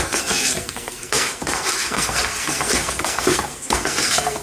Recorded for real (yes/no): no